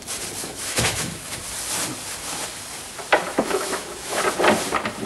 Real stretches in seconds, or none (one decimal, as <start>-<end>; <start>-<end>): 0.0-0.4; 1.4-3.3; 4.2-5.1